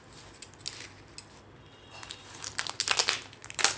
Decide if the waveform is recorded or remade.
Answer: recorded